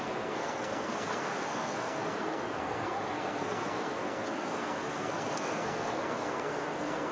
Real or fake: fake